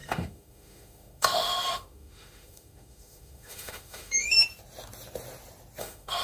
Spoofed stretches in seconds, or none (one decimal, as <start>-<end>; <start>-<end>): 0.0-4.4; 5.8-6.2